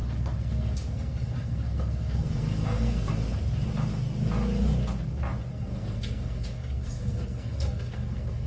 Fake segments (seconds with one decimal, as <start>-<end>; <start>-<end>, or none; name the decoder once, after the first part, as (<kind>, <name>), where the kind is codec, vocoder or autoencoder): 0.0-3.1 (codec, SNAC); 5.5-8.5

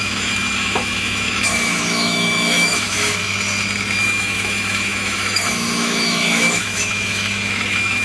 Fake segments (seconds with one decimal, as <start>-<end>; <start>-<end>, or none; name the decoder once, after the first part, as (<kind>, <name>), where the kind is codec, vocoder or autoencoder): 0.0-3.3 (autoencoder, DAC-VAE); 4.0-8.0

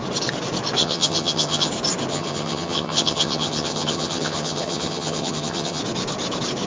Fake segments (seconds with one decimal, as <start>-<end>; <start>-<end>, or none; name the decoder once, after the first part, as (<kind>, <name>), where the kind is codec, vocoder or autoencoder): 0.8-1.7 (vocoder, HiFi-GAN); 2.1-5.8

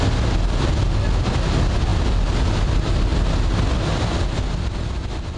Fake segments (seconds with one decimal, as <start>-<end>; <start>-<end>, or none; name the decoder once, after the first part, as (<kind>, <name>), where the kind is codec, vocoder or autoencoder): none

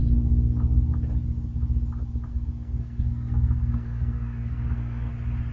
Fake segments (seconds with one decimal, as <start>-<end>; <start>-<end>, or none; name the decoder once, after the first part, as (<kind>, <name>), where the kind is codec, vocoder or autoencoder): 2.3-5.1 (codec, SNAC)

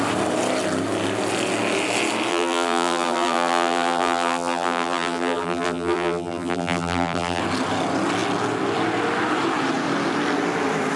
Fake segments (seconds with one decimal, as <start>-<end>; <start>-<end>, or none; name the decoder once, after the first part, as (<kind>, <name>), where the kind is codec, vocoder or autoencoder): 2.3-7.4 (vocoder, BigVGAN v2)

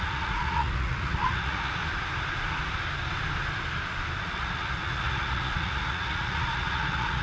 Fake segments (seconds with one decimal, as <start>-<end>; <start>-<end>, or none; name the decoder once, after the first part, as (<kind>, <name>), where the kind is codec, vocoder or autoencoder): 0.0-1.8 (vocoder, Vocos); 4.2-7.2